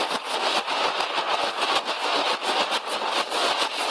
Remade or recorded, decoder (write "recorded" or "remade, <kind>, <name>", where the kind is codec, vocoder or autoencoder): recorded